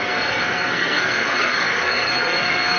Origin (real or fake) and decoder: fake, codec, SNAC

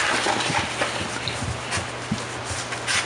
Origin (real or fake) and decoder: real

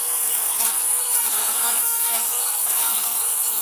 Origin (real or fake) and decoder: fake, codec, SNAC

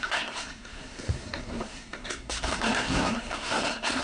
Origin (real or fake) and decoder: fake, codec, SNAC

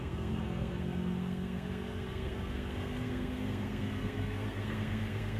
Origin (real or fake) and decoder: fake, codec, SNAC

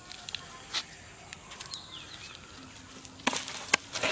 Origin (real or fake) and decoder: real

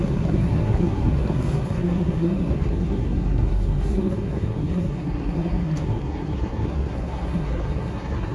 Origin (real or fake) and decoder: fake, codec, SNAC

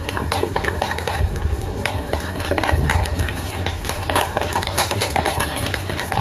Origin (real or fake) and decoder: fake, codec, SNAC